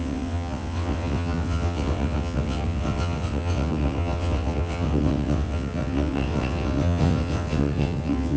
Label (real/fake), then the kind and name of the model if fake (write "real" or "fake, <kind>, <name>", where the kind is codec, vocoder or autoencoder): fake, vocoder, WaveNeXt